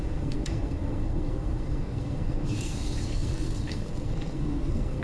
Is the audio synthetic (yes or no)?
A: yes